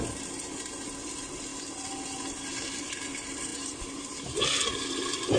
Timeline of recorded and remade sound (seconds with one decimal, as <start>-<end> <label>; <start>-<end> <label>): 0.0-3.5 recorded; 3.5-4.2 remade; 4.2-5.4 recorded